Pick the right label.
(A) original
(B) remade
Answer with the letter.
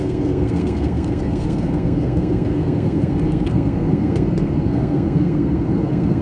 B